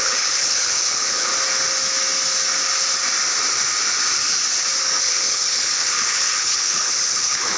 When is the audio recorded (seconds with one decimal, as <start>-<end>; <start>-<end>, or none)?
1.3-5.0